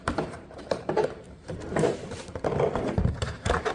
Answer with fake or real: fake